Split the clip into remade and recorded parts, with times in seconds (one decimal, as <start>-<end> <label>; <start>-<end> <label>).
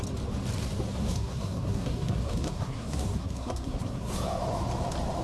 0.0-1.0 recorded; 1.0-4.1 remade; 4.1-5.2 recorded